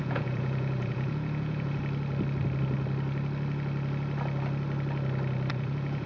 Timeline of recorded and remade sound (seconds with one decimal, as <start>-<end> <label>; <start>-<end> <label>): 0.0-1.8 remade; 1.8-5.5 recorded; 5.5-6.1 remade